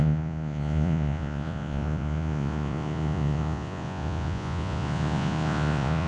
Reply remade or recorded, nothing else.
remade